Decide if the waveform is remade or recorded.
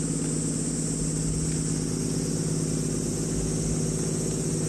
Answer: recorded